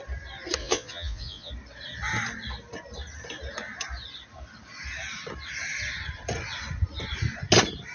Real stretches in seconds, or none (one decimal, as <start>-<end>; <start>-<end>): 0.0-0.6; 1.5-7.9